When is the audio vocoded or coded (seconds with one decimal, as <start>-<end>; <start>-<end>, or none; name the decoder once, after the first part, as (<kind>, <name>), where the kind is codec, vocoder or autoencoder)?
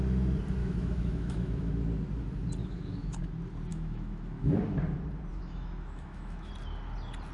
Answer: 0.6-1.7 (autoencoder, DAC-VAE); 2.6-3.2; 3.7-4.5; 5.3-6.5